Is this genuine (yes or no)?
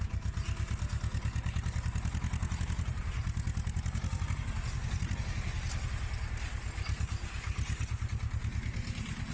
yes